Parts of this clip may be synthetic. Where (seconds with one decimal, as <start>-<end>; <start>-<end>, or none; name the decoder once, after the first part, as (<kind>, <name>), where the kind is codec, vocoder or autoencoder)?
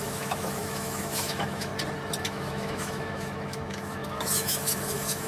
0.0-1.7 (autoencoder, DAC-VAE); 2.2-5.3